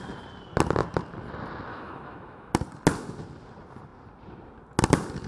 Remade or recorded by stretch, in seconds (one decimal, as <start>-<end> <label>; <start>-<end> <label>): 0.0-1.7 recorded; 1.7-2.5 remade; 2.5-5.3 recorded

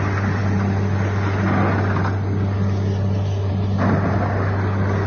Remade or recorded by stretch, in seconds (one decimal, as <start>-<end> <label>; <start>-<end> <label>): 0.0-5.1 recorded

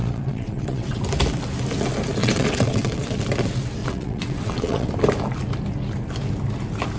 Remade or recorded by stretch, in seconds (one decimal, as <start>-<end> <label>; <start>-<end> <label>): 0.0-1.0 remade; 1.0-2.2 recorded; 2.2-3.2 remade; 3.2-3.8 recorded; 3.8-4.9 remade; 4.9-7.0 recorded

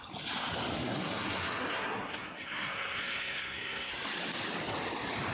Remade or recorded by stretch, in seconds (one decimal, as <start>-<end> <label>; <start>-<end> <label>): 0.0-0.7 recorded; 0.7-3.9 remade; 3.9-5.3 recorded